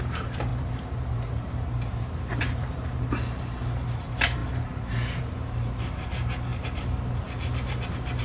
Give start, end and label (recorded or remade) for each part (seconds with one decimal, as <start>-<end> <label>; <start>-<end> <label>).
0.0-8.2 remade